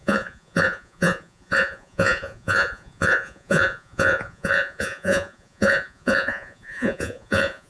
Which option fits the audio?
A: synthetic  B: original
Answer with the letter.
A